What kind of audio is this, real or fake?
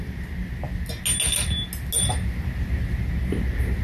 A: real